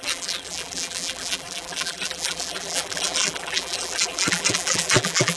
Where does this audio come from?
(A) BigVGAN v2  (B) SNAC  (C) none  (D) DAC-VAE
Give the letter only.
A